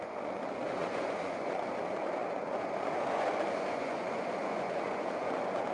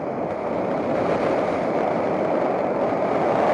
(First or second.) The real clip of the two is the second